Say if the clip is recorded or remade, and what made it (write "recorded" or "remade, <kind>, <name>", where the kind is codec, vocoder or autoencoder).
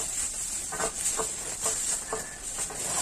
remade, vocoder, BigVGAN v2